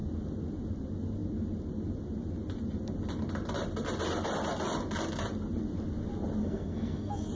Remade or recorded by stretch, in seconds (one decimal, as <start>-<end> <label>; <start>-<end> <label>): 0.0-6.4 recorded; 6.4-7.3 remade